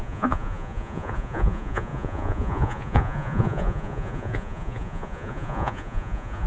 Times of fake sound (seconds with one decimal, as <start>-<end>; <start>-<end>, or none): 0.0-6.5